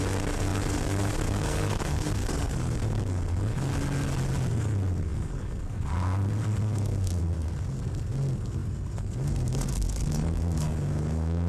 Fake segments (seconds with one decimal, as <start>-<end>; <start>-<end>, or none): 0.0-3.7; 4.5-11.5